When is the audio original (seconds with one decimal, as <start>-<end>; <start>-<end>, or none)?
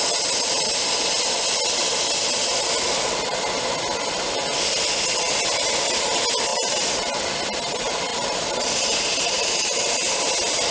0.0-6.5; 7.3-8.1; 10.2-10.7